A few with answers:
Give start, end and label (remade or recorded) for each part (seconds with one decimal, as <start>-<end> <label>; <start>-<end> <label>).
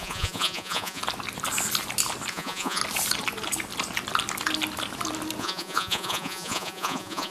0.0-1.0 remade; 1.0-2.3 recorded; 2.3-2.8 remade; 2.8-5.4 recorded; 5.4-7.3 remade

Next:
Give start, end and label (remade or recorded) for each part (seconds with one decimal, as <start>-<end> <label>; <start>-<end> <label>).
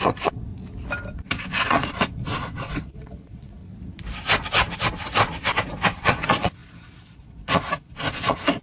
0.0-0.5 remade; 0.5-1.1 recorded; 1.1-3.6 remade; 3.6-6.0 recorded; 6.0-8.6 remade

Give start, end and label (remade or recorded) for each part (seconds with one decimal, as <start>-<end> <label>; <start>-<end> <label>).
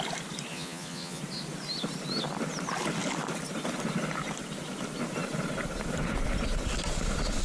0.0-0.5 recorded; 0.5-1.2 remade; 1.2-7.4 recorded